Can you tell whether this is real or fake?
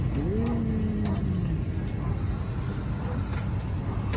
real